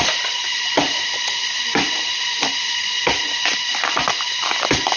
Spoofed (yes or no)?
no